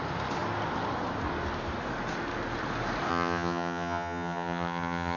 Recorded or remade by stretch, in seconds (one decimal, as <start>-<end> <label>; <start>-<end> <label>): 0.0-3.1 recorded; 3.1-5.2 remade